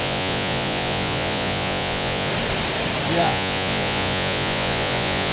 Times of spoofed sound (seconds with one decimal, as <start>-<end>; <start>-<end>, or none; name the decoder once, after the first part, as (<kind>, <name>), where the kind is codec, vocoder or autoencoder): 0.0-2.3 (vocoder, Vocos); 3.2-5.3